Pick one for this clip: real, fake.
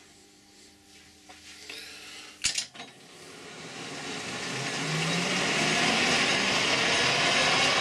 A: real